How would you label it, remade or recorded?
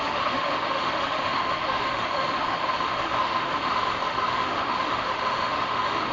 remade